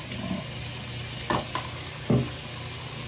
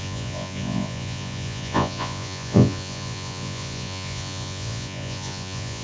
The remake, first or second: second